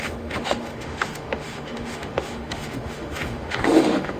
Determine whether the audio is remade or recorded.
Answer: remade